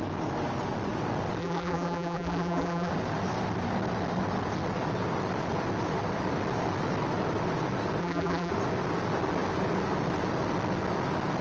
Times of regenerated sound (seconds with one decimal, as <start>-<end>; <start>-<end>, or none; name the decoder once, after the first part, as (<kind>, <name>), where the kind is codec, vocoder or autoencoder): 1.4-2.9 (vocoder, BigVGAN v2); 8.0-8.5